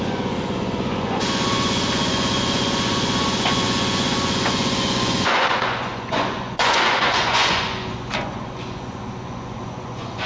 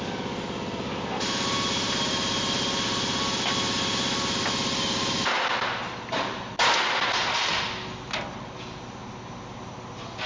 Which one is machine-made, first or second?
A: first